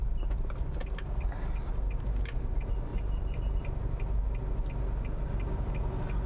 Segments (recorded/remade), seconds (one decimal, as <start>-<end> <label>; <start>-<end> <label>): 0.0-2.9 recorded; 2.9-3.6 remade; 3.6-6.3 recorded